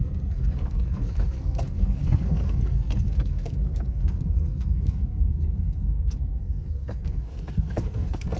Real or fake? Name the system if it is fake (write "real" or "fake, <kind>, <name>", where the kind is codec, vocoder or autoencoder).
fake, codec, SNAC